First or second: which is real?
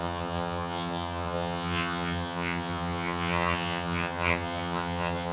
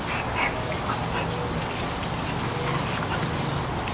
second